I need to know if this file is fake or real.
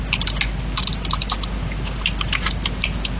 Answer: real